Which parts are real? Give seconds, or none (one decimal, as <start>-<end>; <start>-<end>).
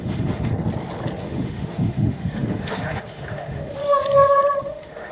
0.5-1.2; 4.0-4.6